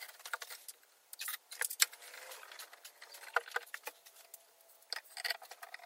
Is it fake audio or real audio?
real